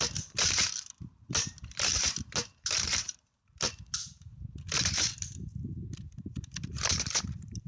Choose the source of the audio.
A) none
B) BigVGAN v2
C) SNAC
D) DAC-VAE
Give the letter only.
B